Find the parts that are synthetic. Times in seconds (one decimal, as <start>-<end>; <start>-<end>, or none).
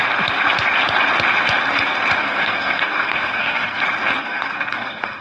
2.2-3.8; 4.2-5.2